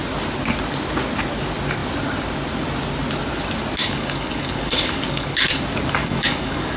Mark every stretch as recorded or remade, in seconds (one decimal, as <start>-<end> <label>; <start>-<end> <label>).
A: 0.0-3.8 recorded; 3.8-5.6 remade; 5.6-6.0 recorded; 6.0-6.8 remade